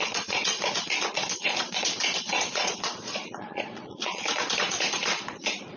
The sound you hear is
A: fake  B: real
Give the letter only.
A